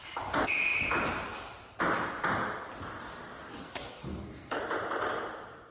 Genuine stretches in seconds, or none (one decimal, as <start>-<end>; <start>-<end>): 0.0-3.5; 4.6-5.7